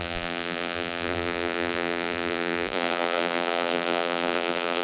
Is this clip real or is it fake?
fake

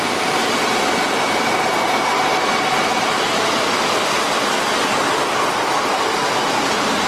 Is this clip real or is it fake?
real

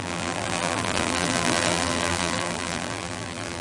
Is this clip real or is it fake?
fake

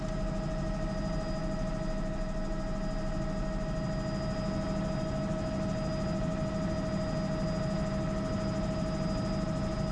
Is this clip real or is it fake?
real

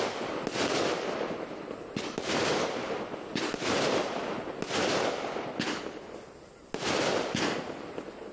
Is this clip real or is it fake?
real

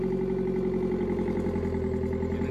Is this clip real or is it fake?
real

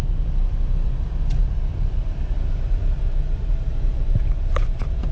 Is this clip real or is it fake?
fake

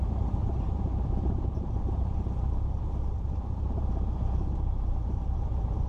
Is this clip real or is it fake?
fake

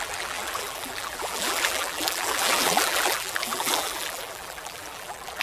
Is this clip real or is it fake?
fake